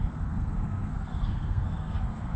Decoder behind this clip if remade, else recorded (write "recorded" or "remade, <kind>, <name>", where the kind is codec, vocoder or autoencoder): remade, codec, SNAC